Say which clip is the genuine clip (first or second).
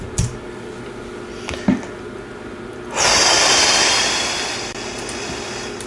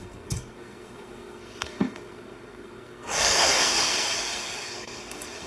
first